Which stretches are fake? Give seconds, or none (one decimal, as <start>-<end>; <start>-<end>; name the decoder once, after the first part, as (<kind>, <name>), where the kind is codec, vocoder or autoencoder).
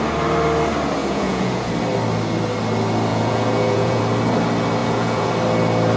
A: 1.0-1.7 (vocoder, Vocos); 3.1-4.0; 4.8-5.3